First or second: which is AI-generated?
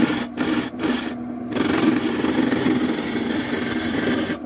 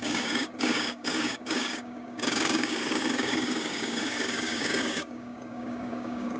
second